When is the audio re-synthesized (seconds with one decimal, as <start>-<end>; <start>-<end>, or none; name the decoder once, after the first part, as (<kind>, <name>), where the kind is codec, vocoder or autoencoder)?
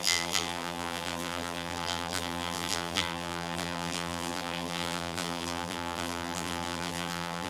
0.0-7.5 (vocoder, BigVGAN v2)